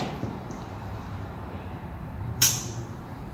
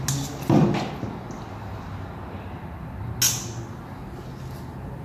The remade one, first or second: first